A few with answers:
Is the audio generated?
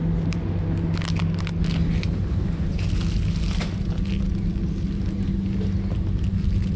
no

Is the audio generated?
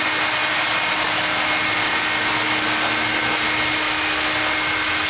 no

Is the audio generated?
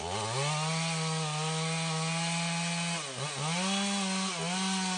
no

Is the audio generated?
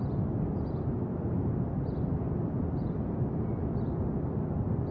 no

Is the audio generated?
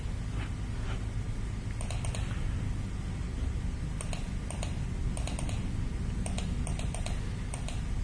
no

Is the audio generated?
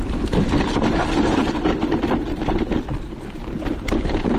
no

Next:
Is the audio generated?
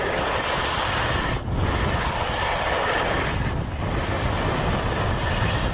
no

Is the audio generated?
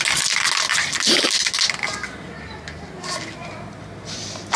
no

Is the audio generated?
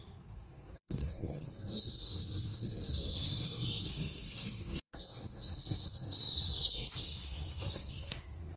yes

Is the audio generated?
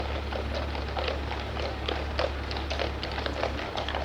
no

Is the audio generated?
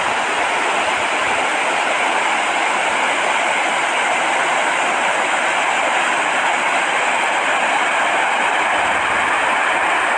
no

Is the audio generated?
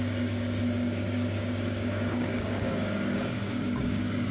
yes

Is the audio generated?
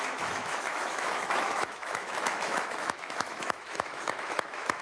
yes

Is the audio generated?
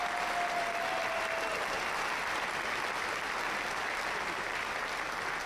no